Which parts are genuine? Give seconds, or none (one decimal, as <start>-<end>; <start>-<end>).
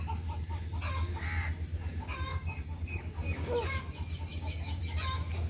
0.0-2.3; 3.5-4.3; 4.8-5.5